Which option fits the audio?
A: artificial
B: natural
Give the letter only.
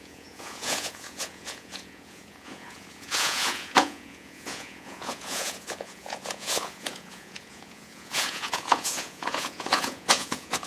A